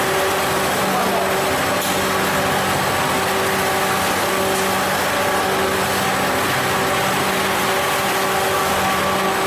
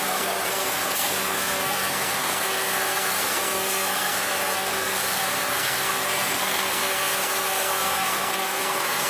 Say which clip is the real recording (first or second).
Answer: first